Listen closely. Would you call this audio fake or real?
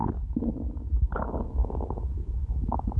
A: real